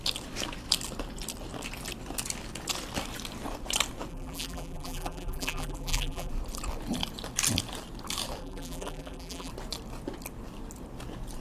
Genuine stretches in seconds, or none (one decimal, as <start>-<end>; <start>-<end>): 0.0-4.1; 6.3-8.4; 9.5-11.4